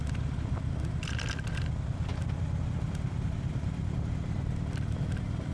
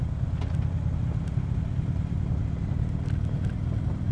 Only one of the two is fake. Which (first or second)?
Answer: first